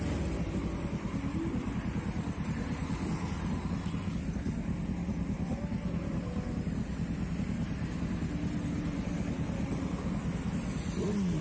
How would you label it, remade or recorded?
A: recorded